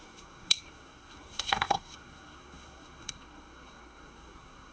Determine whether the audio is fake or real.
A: fake